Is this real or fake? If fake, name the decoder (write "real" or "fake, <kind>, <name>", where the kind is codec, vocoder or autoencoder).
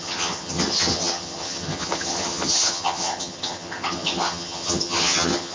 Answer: fake, vocoder, HiFi-GAN